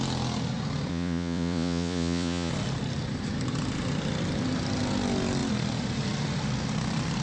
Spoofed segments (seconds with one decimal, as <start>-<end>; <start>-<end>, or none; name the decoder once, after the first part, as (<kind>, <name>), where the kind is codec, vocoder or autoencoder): 0.9-2.5 (vocoder, Vocos)